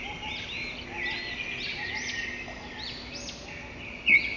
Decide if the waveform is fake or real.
real